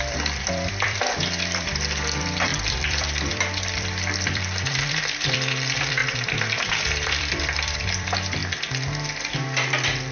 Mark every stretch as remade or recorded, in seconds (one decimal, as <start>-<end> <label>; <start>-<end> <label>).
0.0-8.4 remade; 8.4-9.3 recorded; 9.3-10.1 remade